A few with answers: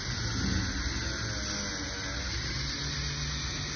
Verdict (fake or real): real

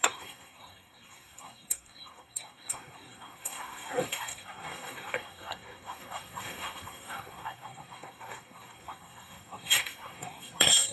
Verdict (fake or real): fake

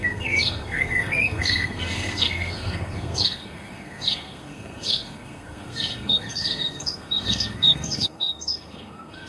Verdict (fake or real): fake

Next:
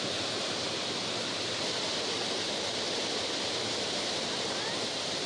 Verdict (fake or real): real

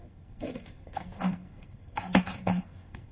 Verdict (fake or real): fake